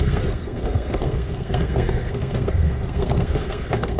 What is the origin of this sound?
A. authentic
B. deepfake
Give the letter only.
B